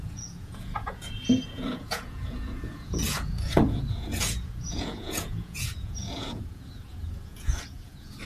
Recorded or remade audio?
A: remade